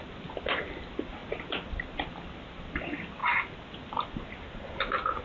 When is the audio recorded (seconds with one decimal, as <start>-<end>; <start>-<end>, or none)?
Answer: 0.0-5.2